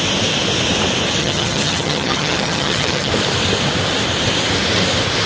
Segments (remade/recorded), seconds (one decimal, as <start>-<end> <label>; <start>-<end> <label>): 0.0-1.2 recorded; 1.2-3.1 remade; 3.1-5.3 recorded